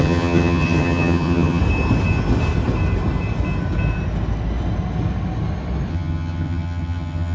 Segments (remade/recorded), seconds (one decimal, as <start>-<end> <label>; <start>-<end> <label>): 0.0-1.6 remade; 1.6-5.9 recorded; 5.9-7.3 remade

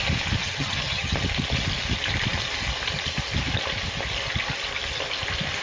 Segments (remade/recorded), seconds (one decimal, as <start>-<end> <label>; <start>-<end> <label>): 0.0-0.4 recorded; 0.4-1.1 remade; 1.1-5.6 recorded

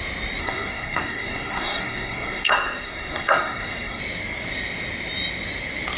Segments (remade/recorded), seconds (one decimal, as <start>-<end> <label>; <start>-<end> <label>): 0.0-0.4 recorded; 0.4-4.0 remade; 4.0-6.0 recorded